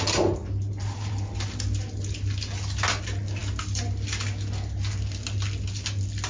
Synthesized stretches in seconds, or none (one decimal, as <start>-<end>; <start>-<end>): none